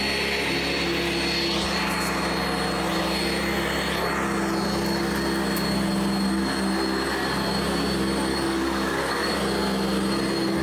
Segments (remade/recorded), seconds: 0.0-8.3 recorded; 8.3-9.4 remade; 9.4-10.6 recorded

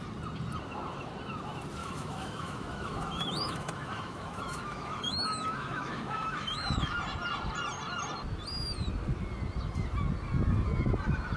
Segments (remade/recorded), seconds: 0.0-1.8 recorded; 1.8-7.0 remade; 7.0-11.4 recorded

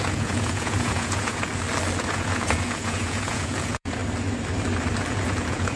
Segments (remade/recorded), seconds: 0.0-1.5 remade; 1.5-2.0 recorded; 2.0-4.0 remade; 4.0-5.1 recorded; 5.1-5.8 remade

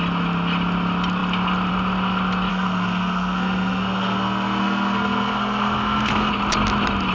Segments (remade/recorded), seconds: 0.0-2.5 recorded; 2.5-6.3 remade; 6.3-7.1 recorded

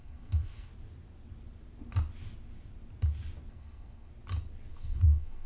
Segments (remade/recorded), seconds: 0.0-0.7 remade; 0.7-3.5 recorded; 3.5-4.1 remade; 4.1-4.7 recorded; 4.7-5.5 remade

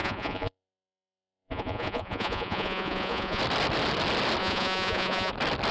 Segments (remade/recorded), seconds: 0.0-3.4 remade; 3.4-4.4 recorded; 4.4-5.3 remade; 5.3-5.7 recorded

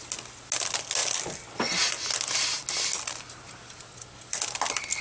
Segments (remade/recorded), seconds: 0.0-5.0 recorded